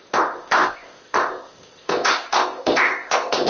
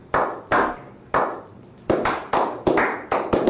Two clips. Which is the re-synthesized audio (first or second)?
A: first